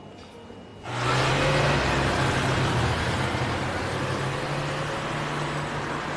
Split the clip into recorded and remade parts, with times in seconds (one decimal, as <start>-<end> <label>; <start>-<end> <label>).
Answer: 0.0-6.2 recorded